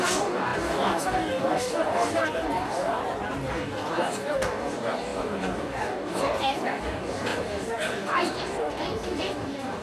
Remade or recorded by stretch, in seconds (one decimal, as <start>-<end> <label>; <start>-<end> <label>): 0.0-3.0 remade; 3.0-3.5 recorded; 3.5-9.8 remade